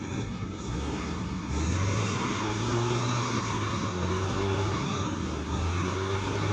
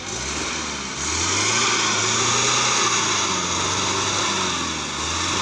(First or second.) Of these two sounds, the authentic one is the second